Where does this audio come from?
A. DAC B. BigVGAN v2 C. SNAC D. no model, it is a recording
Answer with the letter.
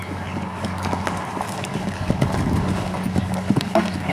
A